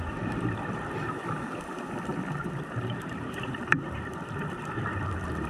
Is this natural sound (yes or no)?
no